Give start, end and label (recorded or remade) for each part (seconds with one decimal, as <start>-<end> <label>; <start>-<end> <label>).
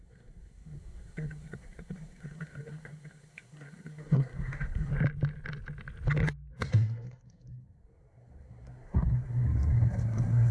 0.0-4.9 remade; 4.9-6.5 recorded; 6.5-10.5 remade